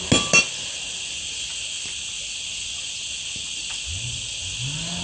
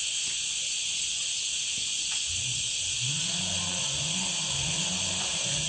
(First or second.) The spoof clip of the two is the second